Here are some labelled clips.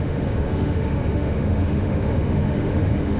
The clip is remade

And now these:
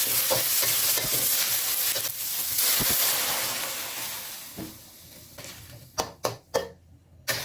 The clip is recorded